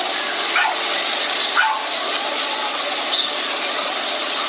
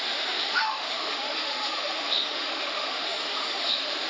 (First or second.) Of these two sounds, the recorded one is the first